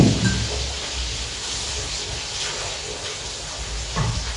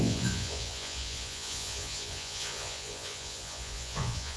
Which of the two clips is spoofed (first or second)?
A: second